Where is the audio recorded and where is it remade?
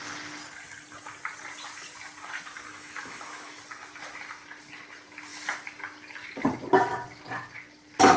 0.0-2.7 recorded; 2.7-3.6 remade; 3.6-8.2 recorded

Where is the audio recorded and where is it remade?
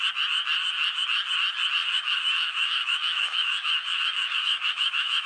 0.0-1.8 recorded; 1.8-5.3 remade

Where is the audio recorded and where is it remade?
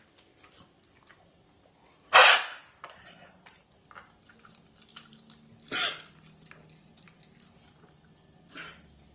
0.0-9.1 recorded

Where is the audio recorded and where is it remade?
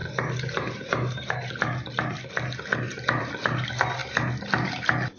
0.0-5.2 recorded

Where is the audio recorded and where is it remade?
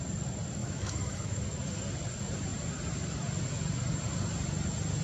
0.0-0.6 recorded; 0.6-1.4 remade; 1.4-5.0 recorded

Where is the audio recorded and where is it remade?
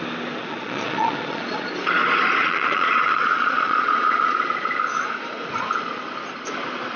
0.0-0.4 recorded; 0.4-1.7 remade; 1.7-2.4 recorded; 2.4-4.7 remade; 4.7-7.0 recorded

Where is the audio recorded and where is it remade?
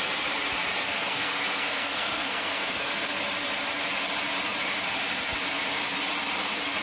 0.0-0.8 recorded; 0.8-3.1 remade; 3.1-6.8 recorded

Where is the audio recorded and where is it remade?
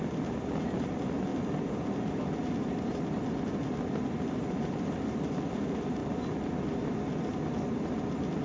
0.0-8.4 recorded